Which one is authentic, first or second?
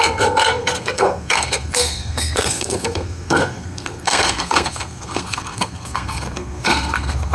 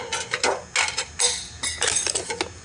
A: second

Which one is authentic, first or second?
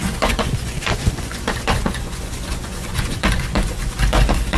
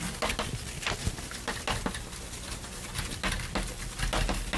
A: second